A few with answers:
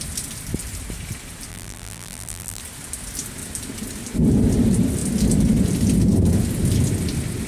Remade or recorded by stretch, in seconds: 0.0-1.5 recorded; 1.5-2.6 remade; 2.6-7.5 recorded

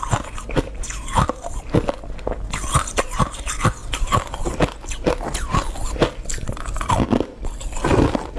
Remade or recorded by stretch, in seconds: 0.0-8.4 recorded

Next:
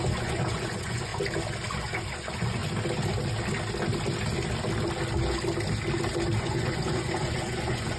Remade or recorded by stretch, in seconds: 0.0-1.1 remade; 1.1-1.7 recorded; 1.7-2.6 remade; 2.6-6.4 recorded; 6.4-8.0 remade

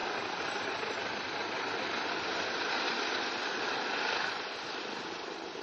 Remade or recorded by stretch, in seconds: 0.0-0.6 recorded; 0.6-1.4 remade; 1.4-4.8 recorded; 4.8-5.6 remade

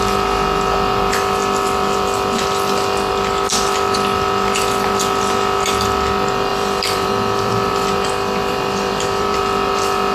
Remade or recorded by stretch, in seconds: 0.0-6.5 recorded; 6.5-7.7 remade; 7.7-8.4 recorded; 8.4-9.4 remade; 9.4-10.1 recorded

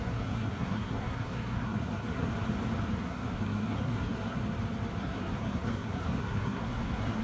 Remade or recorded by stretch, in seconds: 0.0-2.3 remade; 2.3-2.9 recorded; 2.9-4.4 remade; 4.4-5.0 recorded; 5.0-7.2 remade